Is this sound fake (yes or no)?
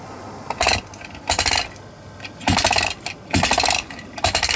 no